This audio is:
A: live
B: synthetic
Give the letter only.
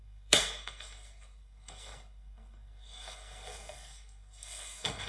B